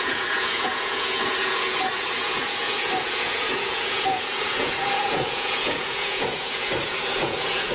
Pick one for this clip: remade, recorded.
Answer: remade